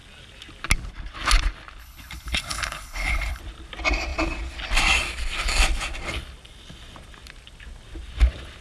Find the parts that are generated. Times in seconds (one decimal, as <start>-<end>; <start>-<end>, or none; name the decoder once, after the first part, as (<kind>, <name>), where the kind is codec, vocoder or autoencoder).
1.8-3.4 (codec, HILCodec)